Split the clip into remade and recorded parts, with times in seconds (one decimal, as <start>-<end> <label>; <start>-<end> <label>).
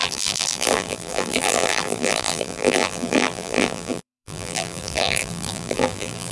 0.0-6.3 remade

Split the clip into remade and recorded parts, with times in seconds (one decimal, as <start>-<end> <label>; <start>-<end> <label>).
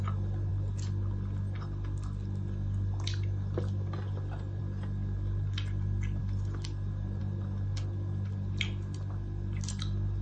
0.0-10.2 recorded